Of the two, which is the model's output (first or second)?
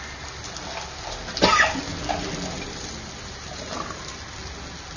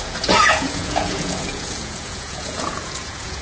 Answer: second